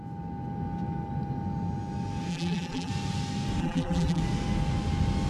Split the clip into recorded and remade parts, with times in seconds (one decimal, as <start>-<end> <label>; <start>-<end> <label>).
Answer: 0.0-2.3 recorded; 2.3-2.9 remade; 2.9-3.6 recorded; 3.6-4.2 remade; 4.2-5.3 recorded